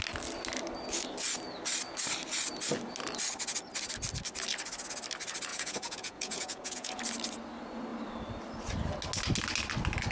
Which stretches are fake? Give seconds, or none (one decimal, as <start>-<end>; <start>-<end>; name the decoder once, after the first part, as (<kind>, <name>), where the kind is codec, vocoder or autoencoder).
5.5-7.0 (vocoder, Vocos)